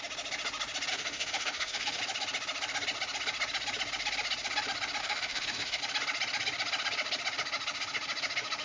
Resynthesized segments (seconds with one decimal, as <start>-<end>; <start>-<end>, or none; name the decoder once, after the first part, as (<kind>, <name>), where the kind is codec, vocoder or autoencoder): 0.9-2.0 (autoencoder, DAC-VAE); 5.0-5.8